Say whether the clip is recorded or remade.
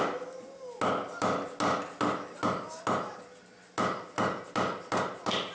recorded